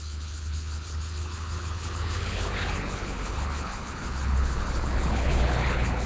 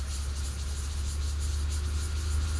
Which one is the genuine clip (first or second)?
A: second